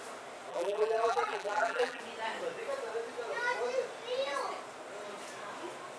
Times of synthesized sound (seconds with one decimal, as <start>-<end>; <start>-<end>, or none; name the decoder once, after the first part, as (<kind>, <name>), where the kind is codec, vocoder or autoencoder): 0.5-2.0 (vocoder, BigVGAN v2)